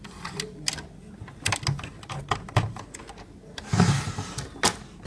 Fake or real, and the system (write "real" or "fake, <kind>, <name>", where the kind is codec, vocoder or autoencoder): real